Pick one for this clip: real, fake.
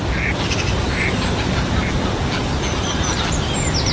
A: real